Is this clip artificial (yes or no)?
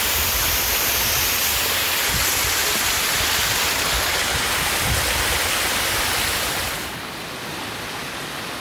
no